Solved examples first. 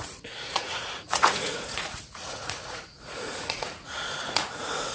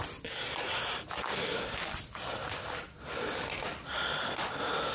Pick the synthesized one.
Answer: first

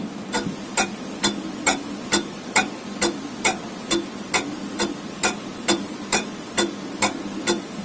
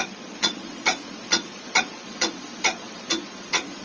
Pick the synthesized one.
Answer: second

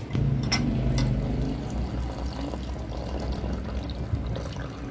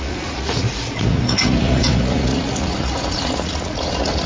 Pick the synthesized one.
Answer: second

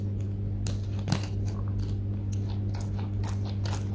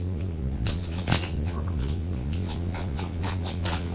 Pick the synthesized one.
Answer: second